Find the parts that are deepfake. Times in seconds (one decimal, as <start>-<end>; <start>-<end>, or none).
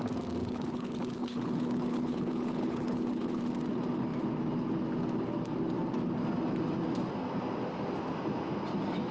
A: 0.4-3.4